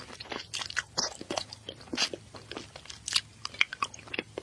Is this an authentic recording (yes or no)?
yes